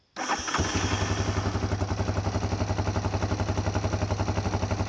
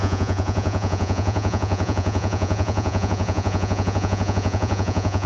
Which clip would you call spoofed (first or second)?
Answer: second